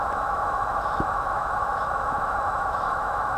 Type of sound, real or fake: fake